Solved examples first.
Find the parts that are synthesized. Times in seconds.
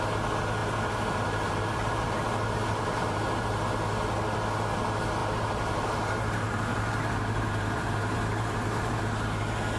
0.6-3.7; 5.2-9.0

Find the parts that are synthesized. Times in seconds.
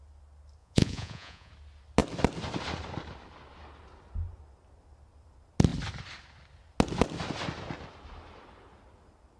0.6-1.5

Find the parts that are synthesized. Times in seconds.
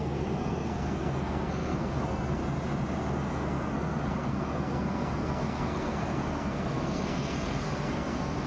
0.0-2.4; 3.0-8.5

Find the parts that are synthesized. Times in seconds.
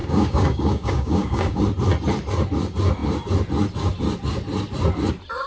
0.0-1.6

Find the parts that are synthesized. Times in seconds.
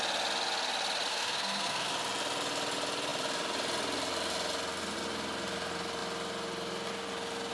1.1-1.9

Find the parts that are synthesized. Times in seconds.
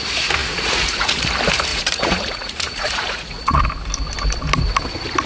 0.4-1.2; 1.7-3.6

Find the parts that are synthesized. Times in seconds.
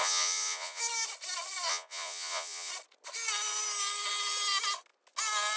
0.0-0.8; 1.7-2.7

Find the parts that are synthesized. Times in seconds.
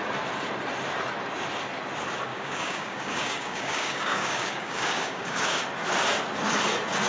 2.3-5.6